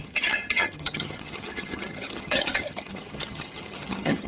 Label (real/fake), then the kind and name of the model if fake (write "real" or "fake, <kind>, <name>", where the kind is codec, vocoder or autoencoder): fake, vocoder, HiFi-GAN